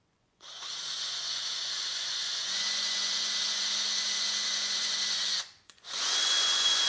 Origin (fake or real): fake